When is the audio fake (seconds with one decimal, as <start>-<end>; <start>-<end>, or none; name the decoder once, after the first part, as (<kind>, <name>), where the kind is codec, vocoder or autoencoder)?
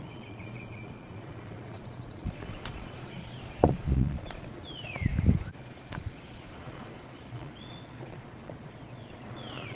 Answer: 0.0-5.1 (vocoder, Vocos); 5.6-9.8